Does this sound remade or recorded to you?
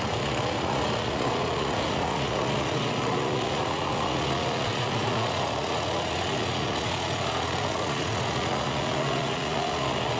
remade